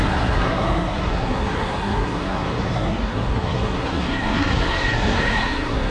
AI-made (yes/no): yes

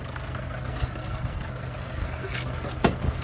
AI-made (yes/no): yes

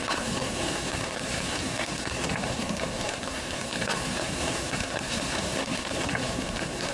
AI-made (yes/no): yes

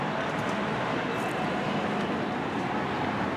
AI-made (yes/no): no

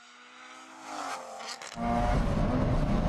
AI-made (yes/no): no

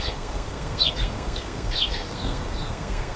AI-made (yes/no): yes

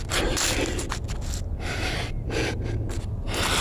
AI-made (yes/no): no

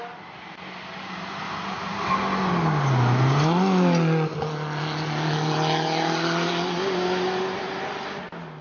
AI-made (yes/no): no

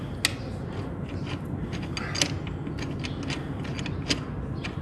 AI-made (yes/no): no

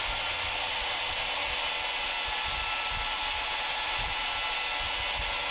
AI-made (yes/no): no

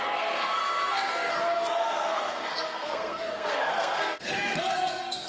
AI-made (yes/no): yes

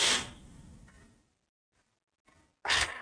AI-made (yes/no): no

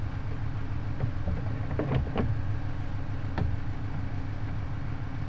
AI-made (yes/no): no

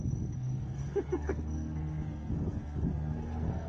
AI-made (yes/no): yes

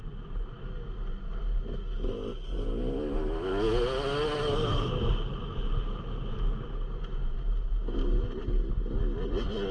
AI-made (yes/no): no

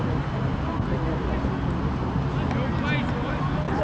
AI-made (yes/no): no